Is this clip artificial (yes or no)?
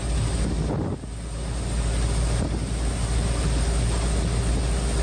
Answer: no